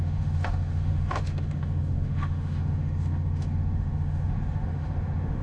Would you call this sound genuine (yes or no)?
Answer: no